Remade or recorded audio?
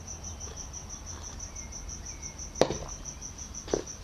recorded